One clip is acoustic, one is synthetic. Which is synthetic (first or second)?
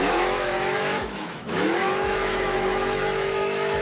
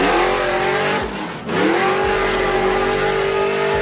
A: first